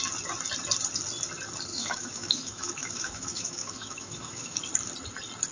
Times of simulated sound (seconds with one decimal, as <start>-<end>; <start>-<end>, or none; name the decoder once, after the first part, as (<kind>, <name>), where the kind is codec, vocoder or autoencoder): 1.7-4.6 (autoencoder, DAC-VAE)